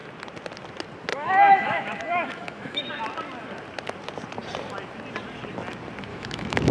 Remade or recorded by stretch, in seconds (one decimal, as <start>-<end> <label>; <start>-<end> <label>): 0.0-1.1 recorded; 1.1-2.8 remade; 2.8-6.1 recorded; 6.1-6.7 remade